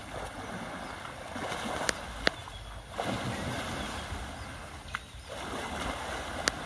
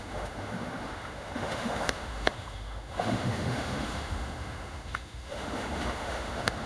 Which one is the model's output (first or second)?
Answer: second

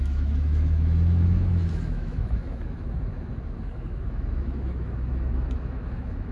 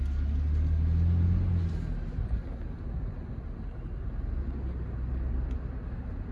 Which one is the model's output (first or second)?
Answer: first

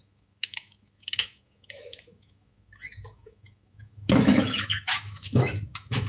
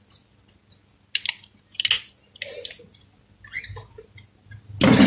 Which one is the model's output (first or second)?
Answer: first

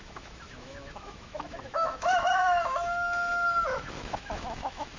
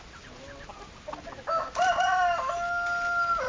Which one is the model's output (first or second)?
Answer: first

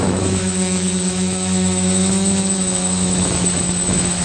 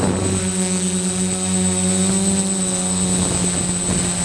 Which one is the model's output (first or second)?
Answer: first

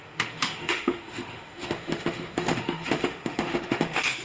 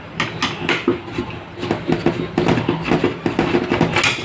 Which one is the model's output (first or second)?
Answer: first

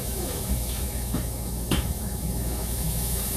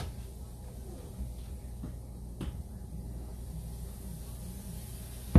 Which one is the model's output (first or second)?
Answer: first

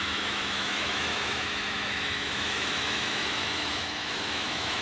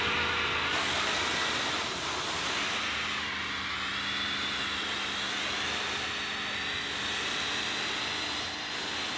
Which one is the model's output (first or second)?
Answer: first